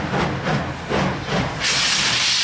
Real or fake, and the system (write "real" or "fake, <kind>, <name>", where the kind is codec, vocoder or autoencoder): real